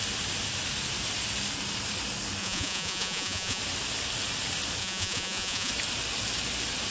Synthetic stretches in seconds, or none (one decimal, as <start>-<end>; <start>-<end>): 2.4-3.6; 4.8-5.7